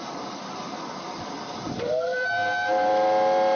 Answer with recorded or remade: recorded